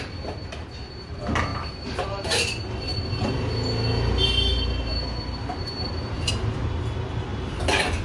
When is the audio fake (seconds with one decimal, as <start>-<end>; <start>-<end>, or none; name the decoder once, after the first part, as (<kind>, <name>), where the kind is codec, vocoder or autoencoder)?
none